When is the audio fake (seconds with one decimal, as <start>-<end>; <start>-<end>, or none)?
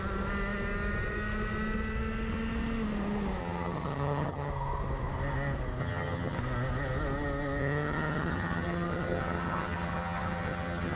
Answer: 3.4-4.5; 5.8-6.4; 7.6-11.0